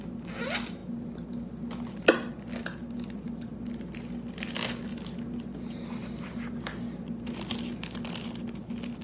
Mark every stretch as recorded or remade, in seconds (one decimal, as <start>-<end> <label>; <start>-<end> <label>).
0.0-9.0 recorded

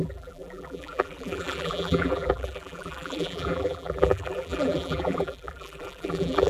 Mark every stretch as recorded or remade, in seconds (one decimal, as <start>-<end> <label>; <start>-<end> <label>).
0.0-6.5 remade

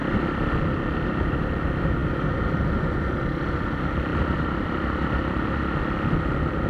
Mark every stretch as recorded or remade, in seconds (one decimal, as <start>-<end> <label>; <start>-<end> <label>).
0.0-0.6 remade; 0.6-2.0 recorded; 2.0-2.6 remade; 2.6-4.1 recorded; 4.1-5.8 remade; 5.8-6.7 recorded

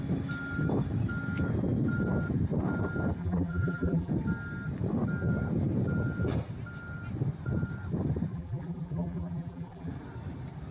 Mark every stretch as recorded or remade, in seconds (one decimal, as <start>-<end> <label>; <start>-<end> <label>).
0.0-3.2 recorded; 3.2-4.1 remade; 4.1-8.3 recorded; 8.3-9.9 remade; 9.9-10.7 recorded

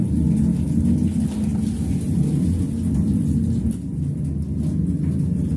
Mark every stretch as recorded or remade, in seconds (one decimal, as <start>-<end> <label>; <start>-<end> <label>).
0.0-5.6 recorded

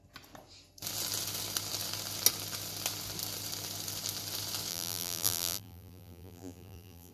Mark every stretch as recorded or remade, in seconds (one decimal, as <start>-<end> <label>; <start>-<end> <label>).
0.0-4.7 recorded; 4.7-7.1 remade